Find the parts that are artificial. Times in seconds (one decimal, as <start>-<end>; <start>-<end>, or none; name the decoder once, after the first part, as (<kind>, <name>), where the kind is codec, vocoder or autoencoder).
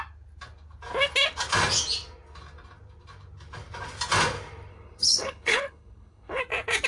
4.7-6.4 (codec, HILCodec)